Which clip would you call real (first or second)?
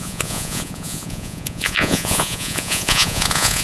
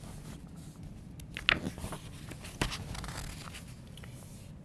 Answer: second